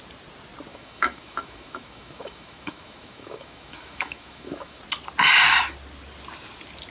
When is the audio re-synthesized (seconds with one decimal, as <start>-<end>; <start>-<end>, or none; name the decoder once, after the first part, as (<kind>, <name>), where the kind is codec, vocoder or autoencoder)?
0.7-4.8 (autoencoder, DAC-VAE)